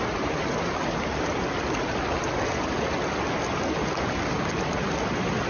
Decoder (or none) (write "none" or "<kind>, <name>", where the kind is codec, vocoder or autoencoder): none